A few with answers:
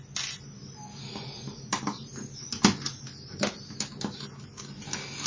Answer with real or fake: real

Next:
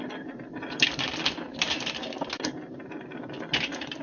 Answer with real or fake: real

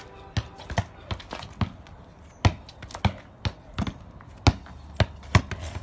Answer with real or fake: real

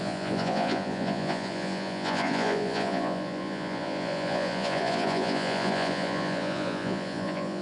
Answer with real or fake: fake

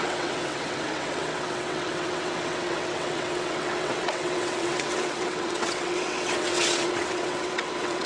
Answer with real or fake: fake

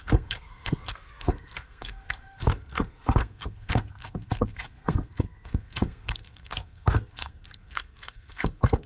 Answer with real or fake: fake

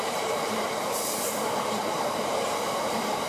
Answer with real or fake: fake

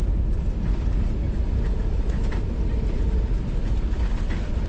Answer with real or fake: real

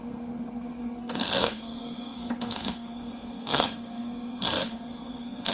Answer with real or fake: fake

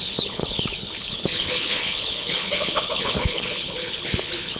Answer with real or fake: fake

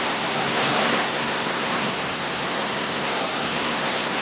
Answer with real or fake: fake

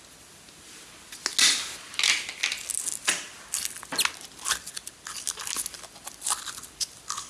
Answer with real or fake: real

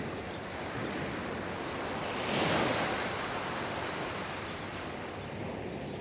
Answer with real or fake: real